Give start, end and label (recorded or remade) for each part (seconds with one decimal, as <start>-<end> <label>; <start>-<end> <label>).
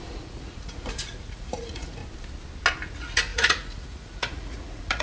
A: 0.0-2.0 remade; 2.0-2.9 recorded; 2.9-5.0 remade